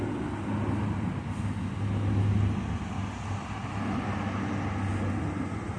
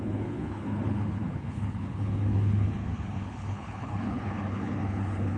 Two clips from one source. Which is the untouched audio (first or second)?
first